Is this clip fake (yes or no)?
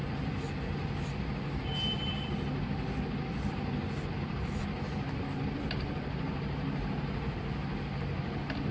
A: no